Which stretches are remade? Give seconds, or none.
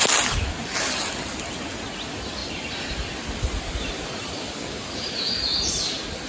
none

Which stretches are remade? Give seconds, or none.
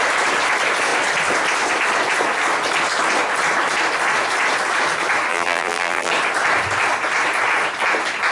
5.3-6.1 (vocoder, BigVGAN v2)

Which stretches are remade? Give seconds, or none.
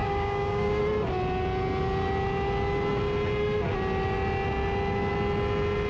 0.0-0.8 (codec, DAC)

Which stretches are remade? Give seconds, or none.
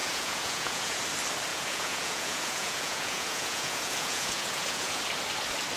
0.0-1.0 (vocoder, Vocos); 1.5-5.0